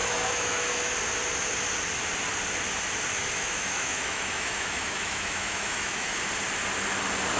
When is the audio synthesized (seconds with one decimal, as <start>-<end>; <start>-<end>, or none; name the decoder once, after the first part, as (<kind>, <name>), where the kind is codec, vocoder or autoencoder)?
0.0-0.9 (autoencoder, DAC-VAE); 3.1-6.3

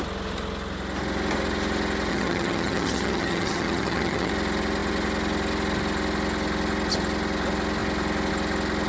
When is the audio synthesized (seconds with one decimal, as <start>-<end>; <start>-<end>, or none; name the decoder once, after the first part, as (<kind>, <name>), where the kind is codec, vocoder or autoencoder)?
2.1-4.3 (vocoder, HiFi-GAN)

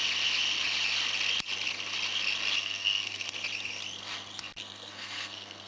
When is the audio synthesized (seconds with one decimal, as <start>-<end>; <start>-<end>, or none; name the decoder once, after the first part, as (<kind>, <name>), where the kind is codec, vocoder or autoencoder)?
2.6-3.3 (codec, SNAC); 4.6-5.7

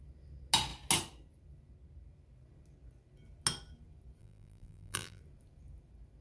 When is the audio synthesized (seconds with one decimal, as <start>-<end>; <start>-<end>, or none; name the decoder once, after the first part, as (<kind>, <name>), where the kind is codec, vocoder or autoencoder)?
4.2-5.2 (vocoder, BigVGAN v2)

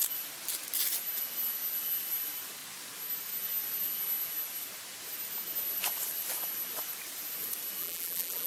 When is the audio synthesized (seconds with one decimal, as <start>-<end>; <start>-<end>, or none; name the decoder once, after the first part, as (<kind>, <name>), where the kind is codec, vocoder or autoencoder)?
7.8-8.5 (vocoder, BigVGAN v2)

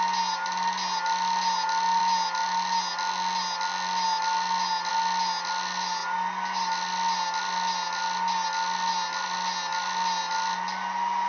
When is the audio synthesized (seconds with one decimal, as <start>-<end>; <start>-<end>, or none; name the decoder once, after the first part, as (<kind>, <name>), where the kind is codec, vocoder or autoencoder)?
none